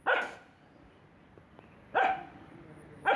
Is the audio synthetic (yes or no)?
no